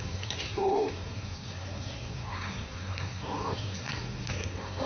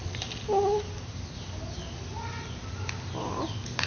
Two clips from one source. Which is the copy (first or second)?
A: first